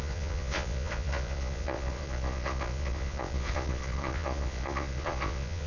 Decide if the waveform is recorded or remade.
remade